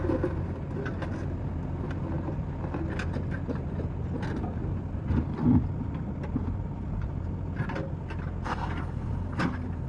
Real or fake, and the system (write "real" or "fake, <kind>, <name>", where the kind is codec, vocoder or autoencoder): real